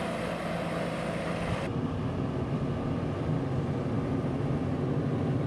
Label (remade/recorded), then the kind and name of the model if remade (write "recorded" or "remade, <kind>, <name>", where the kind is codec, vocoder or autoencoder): recorded